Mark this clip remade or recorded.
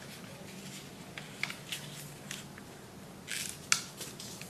recorded